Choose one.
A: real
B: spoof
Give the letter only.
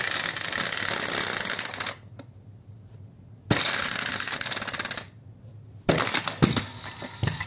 A